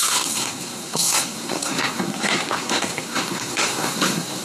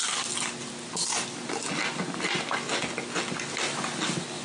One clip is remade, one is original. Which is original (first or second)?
second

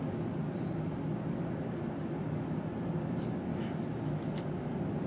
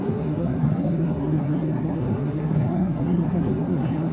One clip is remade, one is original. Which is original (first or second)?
first